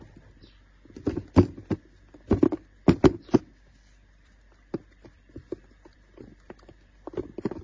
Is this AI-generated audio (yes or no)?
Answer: yes